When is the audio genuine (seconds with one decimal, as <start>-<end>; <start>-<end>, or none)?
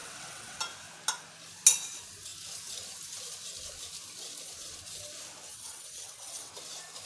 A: 0.6-5.5; 6.5-7.1